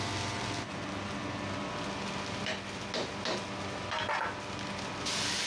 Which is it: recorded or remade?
recorded